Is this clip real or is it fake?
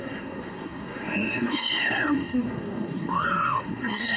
fake